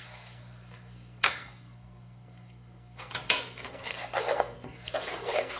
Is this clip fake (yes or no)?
yes